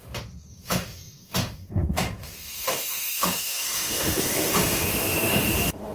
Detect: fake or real fake